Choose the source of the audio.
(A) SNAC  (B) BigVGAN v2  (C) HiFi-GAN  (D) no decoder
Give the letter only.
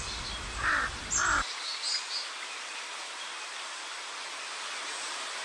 D